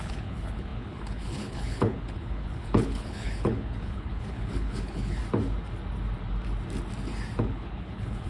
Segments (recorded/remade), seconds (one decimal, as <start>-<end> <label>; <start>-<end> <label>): 0.0-5.2 remade; 5.2-7.4 recorded; 7.4-8.3 remade